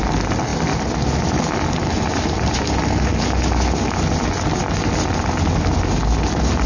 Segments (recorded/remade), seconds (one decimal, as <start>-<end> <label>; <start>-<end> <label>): 0.0-6.7 recorded